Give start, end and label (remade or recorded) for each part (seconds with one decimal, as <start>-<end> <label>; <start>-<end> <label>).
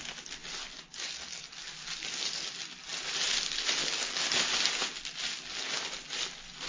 0.0-6.7 recorded